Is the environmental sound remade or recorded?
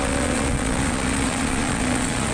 remade